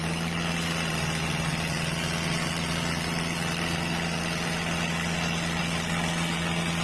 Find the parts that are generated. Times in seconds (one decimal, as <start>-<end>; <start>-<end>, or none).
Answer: none

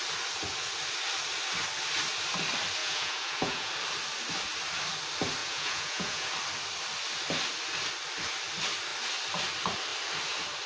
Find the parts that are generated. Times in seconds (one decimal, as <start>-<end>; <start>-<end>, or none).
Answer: 2.8-3.7; 5.4-6.3

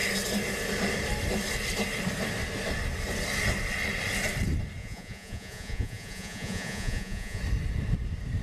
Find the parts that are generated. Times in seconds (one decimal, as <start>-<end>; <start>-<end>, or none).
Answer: 4.8-7.4

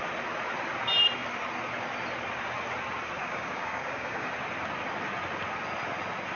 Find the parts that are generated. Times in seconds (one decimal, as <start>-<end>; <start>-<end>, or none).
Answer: 3.2-4.3

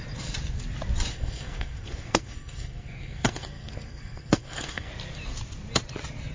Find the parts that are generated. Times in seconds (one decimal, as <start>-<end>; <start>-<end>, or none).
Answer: 1.1-4.9

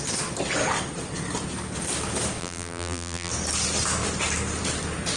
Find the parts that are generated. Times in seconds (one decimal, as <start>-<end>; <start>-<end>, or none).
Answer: 2.4-3.3